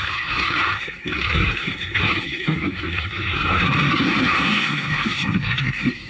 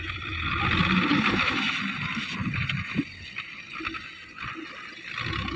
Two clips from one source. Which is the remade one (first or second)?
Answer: first